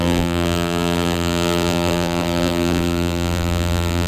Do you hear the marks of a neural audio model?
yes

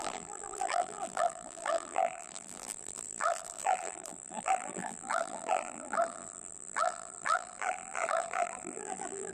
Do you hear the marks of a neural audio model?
yes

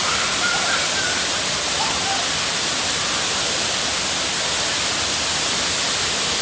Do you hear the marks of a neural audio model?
no